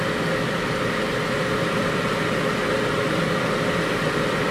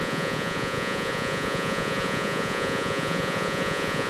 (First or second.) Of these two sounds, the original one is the first